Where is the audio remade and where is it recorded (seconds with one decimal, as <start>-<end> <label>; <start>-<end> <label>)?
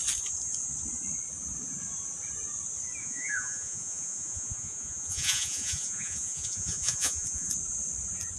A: 0.0-3.0 recorded; 3.0-7.5 remade; 7.5-8.4 recorded